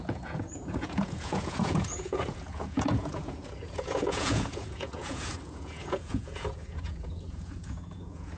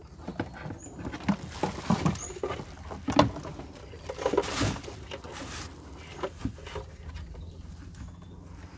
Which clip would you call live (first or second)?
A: second